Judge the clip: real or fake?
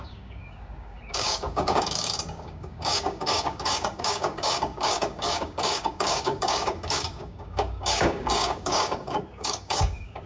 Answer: fake